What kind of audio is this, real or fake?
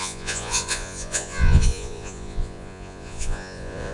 fake